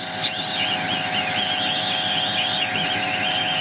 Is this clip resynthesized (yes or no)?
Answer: no